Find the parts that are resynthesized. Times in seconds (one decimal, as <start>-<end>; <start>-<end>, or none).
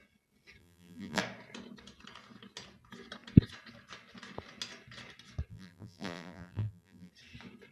0.6-1.2; 5.5-7.1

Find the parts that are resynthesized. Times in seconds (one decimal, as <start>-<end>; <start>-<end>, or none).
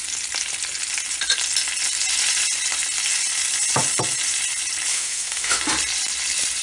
4.9-5.6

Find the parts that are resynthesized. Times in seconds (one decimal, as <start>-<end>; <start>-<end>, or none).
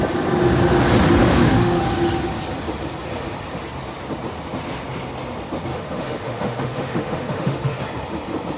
1.2-1.8; 5.7-7.8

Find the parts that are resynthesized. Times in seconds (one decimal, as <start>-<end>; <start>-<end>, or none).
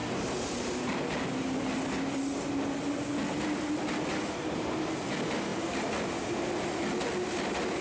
0.0-1.0; 5.5-6.4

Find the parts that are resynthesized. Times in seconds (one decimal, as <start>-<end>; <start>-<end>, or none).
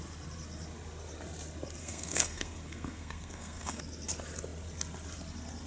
1.8-3.8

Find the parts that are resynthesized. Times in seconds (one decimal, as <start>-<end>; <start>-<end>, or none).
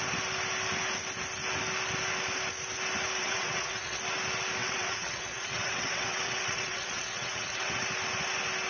3.2-4.0; 4.6-7.9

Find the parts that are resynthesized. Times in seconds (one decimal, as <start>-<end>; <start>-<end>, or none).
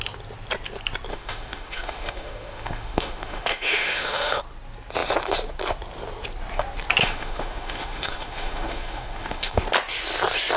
1.1-4.4; 7.0-9.6